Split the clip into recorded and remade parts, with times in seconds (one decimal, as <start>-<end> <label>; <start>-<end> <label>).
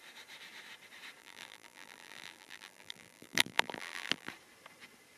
0.0-1.2 recorded; 1.2-4.3 remade; 4.3-5.2 recorded